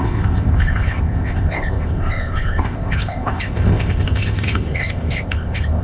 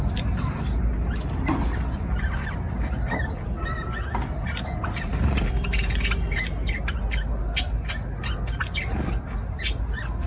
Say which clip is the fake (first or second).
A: first